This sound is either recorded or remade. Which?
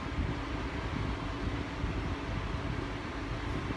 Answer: recorded